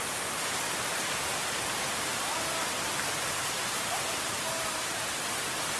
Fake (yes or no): no